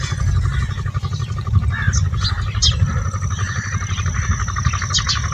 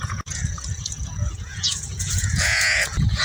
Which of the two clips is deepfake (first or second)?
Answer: second